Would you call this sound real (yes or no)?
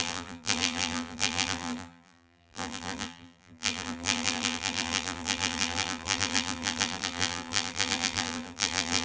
no